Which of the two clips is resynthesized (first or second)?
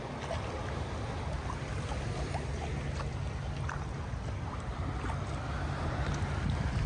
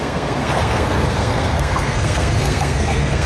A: second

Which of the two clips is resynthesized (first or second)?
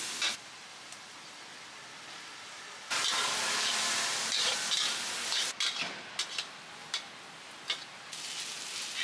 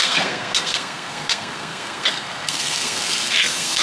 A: second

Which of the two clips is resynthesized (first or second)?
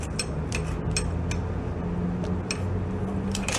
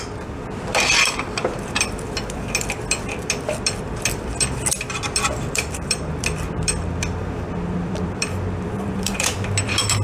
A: second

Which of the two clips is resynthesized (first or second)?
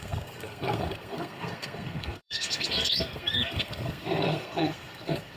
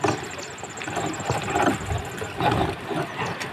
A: first